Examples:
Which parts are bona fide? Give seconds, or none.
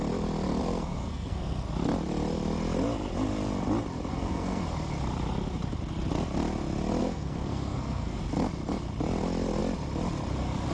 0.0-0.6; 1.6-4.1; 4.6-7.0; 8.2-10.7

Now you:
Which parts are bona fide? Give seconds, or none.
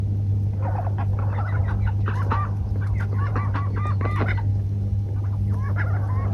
0.0-4.5; 5.2-6.3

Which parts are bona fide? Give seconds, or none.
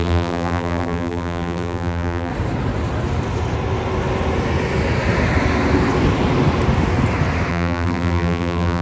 2.3-7.5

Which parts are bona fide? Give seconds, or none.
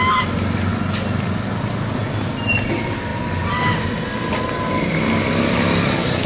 0.0-6.3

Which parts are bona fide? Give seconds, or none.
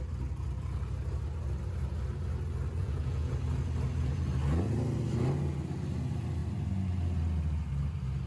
0.0-2.8; 3.3-8.3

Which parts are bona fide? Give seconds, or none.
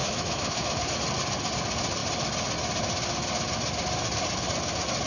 0.8-5.1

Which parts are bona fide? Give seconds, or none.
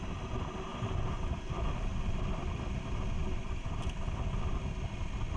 0.0-0.7; 2.8-3.2; 4.4-5.4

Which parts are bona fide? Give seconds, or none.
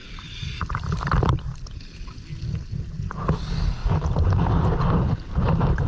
0.0-3.8; 4.5-5.9